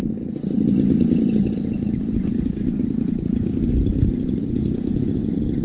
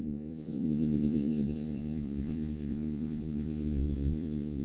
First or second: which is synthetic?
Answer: second